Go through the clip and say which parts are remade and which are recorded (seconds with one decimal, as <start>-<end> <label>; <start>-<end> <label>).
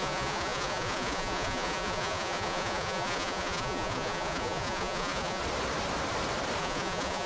0.0-5.4 remade; 5.4-6.6 recorded; 6.6-7.3 remade